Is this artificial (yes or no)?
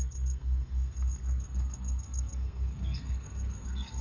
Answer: yes